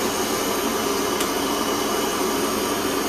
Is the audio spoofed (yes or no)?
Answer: no